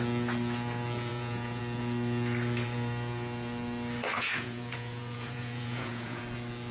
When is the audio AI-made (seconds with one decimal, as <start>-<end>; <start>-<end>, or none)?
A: 1.1-1.6; 4.1-6.2